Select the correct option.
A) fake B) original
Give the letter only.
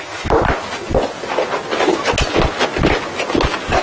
B